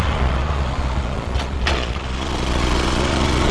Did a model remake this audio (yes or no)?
yes